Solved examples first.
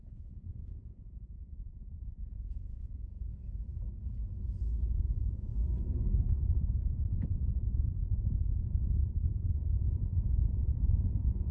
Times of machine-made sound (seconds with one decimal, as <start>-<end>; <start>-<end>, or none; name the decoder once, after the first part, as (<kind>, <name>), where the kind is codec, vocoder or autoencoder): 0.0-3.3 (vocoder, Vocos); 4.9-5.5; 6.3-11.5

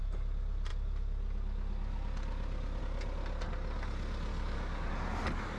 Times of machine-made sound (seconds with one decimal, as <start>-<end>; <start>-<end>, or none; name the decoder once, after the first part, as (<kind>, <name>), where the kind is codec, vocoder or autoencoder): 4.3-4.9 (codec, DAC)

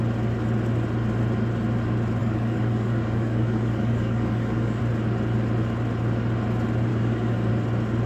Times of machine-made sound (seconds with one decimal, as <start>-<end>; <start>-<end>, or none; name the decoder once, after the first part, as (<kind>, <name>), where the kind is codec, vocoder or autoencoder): 2.2-4.8 (codec, DAC); 6.9-7.5

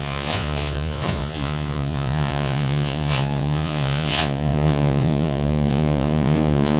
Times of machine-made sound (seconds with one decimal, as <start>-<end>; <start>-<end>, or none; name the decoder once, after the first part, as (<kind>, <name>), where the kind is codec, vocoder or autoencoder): 0.0-6.8 (vocoder, Vocos)